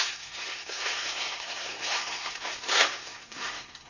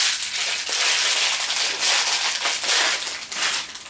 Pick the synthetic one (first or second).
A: first